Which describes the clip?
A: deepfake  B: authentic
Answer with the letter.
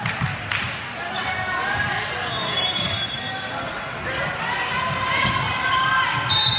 B